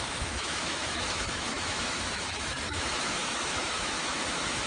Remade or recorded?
remade